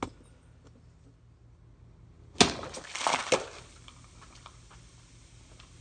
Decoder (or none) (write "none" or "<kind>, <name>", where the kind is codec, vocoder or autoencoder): none